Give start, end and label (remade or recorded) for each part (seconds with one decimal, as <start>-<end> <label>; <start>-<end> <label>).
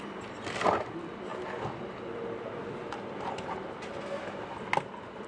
0.0-5.3 recorded